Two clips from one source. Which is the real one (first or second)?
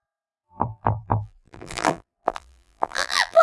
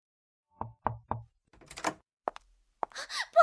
second